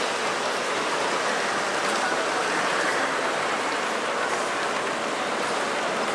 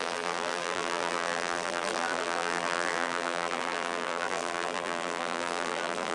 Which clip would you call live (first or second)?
first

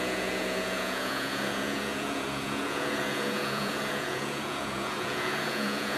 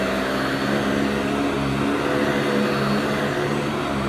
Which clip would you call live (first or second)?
second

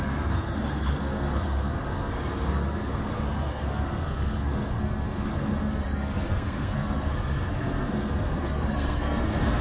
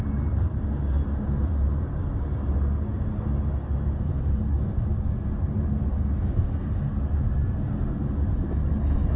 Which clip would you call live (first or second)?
second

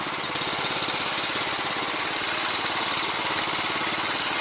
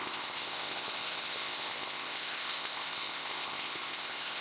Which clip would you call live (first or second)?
first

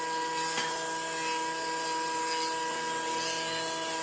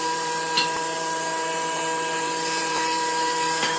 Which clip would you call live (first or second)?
first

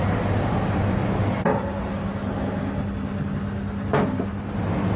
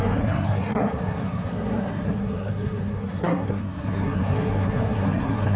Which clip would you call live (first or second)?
first